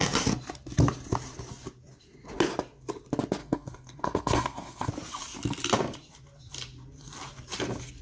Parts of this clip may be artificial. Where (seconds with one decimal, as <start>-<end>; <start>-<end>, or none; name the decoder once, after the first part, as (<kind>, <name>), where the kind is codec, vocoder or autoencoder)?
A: 3.4-4.9 (codec, SNAC)